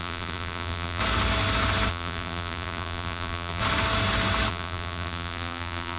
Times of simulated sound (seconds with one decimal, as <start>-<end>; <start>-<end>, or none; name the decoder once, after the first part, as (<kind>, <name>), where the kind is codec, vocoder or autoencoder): 0.0-1.0 (vocoder, BigVGAN v2); 1.9-3.6; 4.5-6.0

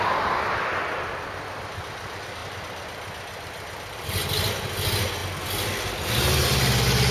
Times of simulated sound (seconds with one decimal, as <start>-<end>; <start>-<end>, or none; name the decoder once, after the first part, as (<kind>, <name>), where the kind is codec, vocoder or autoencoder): none

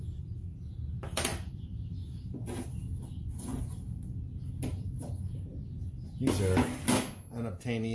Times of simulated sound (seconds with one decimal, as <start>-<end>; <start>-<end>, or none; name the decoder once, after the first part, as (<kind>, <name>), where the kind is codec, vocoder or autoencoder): 1.3-2.0 (vocoder, BigVGAN v2); 3.5-4.0

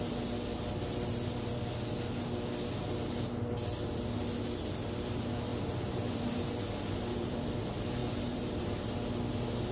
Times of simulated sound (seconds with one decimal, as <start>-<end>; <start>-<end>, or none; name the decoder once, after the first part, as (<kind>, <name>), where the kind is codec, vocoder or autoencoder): 5.5-7.6 (vocoder, BigVGAN v2); 8.0-8.9

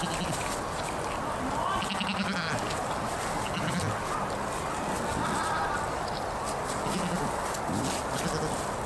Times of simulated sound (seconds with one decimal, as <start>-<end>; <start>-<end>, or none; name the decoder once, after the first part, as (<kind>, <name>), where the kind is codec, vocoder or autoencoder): none